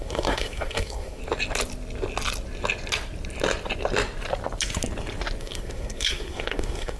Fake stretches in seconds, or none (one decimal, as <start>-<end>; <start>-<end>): 0.0-1.2; 5.4-7.0